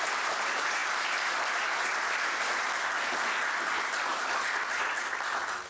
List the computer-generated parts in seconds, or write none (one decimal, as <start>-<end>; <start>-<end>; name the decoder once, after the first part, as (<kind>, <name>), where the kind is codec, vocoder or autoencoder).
none